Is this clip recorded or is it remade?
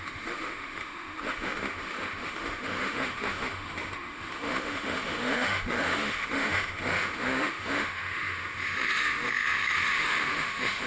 remade